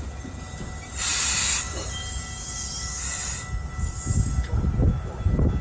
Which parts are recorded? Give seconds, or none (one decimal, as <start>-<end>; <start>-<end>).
0.0-5.6